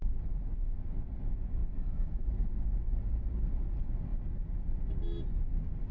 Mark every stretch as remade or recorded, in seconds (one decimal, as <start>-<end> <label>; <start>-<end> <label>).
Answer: 0.0-5.9 recorded